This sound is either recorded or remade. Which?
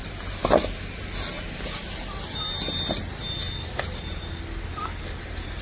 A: recorded